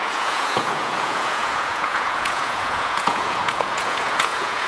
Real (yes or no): no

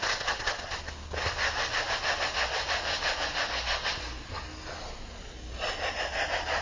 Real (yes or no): yes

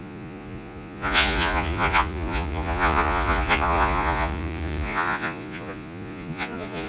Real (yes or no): no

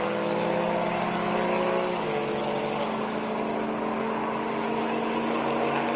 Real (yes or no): yes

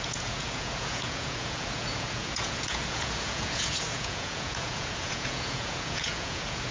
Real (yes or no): no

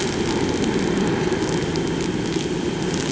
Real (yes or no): yes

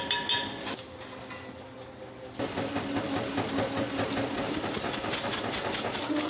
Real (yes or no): yes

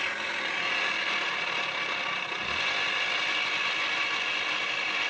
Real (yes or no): yes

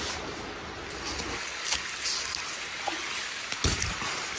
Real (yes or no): yes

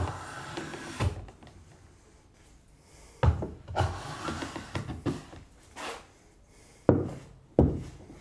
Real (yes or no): yes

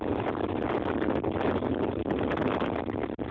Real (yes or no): yes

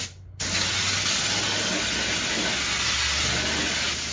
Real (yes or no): yes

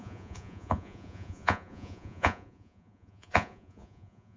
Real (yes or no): no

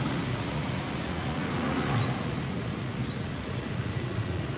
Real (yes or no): no